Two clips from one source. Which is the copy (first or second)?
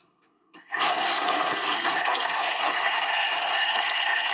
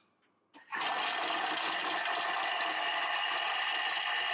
first